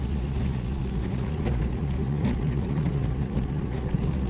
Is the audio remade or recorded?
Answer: remade